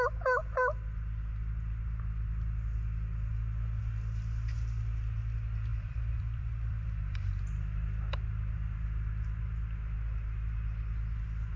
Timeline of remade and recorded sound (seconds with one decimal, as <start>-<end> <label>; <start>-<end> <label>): 0.0-5.7 recorded; 5.7-7.4 remade; 7.4-11.6 recorded